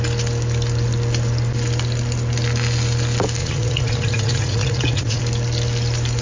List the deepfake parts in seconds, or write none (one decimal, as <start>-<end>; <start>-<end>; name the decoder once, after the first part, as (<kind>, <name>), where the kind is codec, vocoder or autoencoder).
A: 3.4-5.2 (vocoder, Vocos)